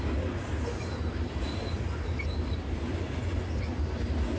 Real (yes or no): yes